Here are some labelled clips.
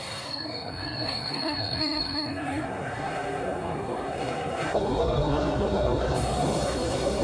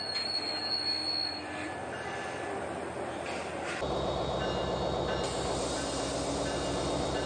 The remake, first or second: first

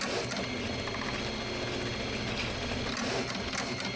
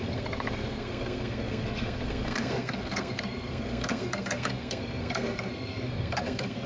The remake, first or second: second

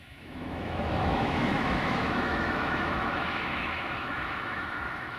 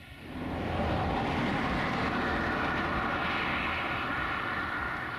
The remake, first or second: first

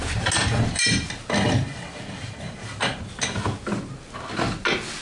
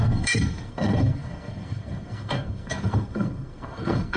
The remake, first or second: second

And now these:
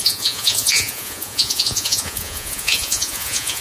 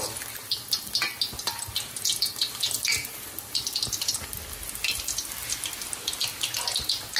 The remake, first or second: first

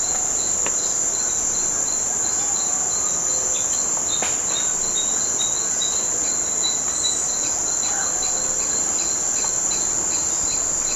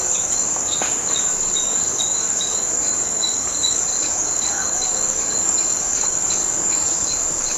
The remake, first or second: second